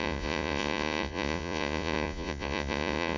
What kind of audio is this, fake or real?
fake